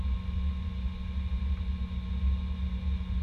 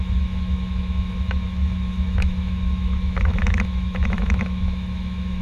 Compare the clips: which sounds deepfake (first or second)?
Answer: second